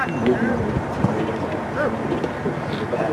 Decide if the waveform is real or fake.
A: real